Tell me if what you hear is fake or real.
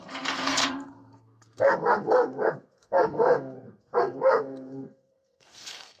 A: fake